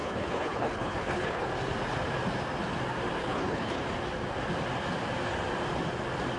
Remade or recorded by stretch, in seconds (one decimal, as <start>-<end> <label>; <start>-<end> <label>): 0.0-1.5 remade; 1.5-3.2 recorded; 3.2-3.8 remade; 3.8-6.4 recorded